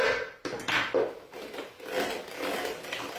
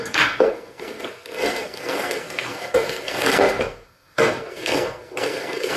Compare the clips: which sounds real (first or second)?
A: first